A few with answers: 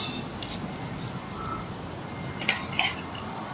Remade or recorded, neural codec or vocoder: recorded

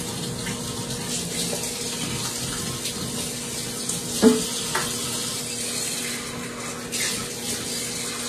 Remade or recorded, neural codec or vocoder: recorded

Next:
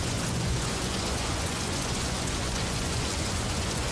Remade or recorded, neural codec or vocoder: remade, vocoder, Vocos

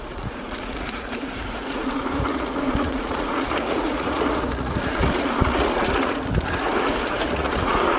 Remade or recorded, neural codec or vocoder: remade, vocoder, Vocos